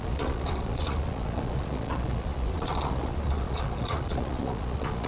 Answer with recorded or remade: remade